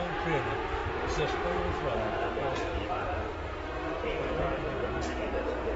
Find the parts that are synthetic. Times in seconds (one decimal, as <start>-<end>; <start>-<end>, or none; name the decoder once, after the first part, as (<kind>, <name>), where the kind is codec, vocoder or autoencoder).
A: 2.5-3.0 (vocoder, Vocos); 4.1-5.1

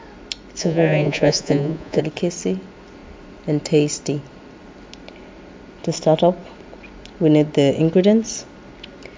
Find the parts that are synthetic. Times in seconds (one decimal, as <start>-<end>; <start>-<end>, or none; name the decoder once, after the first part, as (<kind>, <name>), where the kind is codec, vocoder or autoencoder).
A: 0.6-2.0 (vocoder, Vocos)

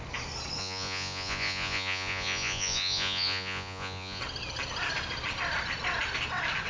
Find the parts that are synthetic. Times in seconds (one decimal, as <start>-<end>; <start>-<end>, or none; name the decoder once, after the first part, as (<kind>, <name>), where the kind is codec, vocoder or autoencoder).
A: 0.6-4.2 (vocoder, Vocos)

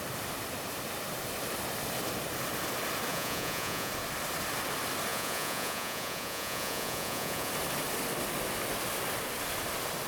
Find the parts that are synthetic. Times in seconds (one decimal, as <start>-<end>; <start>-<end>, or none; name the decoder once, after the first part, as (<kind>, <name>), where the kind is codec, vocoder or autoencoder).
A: 3.1-3.9 (vocoder, Vocos); 5.1-7.5

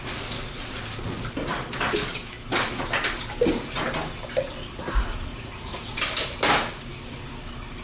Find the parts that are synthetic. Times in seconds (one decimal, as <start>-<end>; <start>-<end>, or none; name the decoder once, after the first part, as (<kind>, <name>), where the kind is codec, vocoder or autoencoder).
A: 5.3-6.0 (vocoder, Vocos)